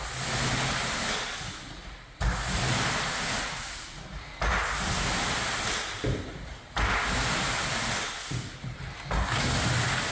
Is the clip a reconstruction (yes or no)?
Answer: no